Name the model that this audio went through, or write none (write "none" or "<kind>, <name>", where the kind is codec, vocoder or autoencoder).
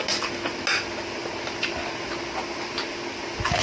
none